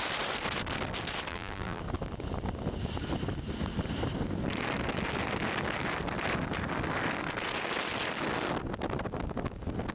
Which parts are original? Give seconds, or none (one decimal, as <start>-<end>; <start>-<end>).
0.0-1.3; 1.8-9.9